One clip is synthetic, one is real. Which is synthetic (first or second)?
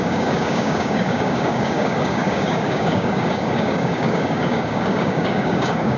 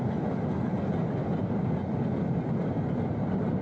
first